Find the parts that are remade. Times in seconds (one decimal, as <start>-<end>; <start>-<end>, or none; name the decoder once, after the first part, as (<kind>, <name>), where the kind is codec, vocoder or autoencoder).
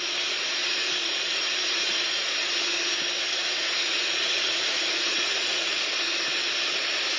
0.6-2.5 (vocoder, Vocos); 3.3-6.0